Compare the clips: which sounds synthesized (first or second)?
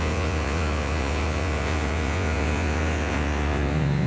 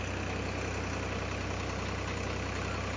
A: first